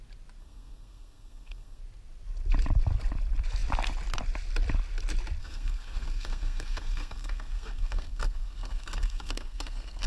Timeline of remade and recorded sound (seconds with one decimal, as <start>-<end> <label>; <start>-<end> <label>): 0.0-0.4 recorded; 0.4-1.8 remade; 1.8-5.4 recorded; 5.4-10.1 remade

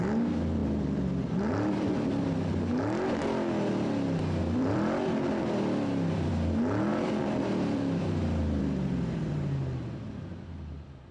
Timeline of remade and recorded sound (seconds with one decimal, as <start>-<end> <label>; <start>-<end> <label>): 0.0-0.6 recorded; 0.6-1.5 remade; 1.5-4.4 recorded; 4.4-6.3 remade; 6.3-6.9 recorded; 6.9-9.3 remade; 9.3-11.1 recorded

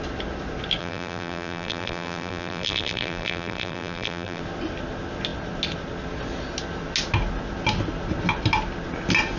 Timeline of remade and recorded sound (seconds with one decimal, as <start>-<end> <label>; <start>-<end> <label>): 0.0-0.8 recorded; 0.8-4.4 remade; 4.4-9.4 recorded

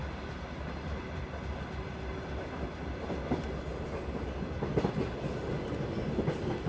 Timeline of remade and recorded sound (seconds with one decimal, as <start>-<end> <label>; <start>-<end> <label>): 0.0-6.7 recorded

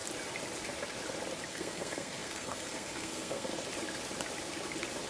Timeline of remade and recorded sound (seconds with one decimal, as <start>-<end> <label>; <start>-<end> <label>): 0.0-1.5 recorded; 1.5-3.5 remade; 3.5-5.1 recorded